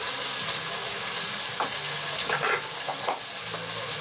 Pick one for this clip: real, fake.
real